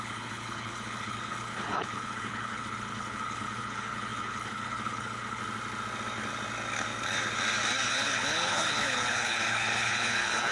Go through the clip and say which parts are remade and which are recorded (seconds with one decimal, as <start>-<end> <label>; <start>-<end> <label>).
0.0-5.4 remade; 5.4-7.9 recorded; 7.9-10.5 remade